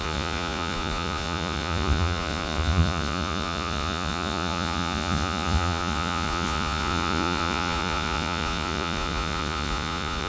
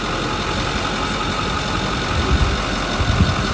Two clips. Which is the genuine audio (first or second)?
second